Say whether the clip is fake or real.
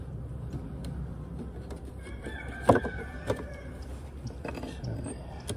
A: fake